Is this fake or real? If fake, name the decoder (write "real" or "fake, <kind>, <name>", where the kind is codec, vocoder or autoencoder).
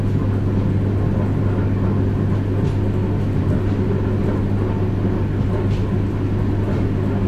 real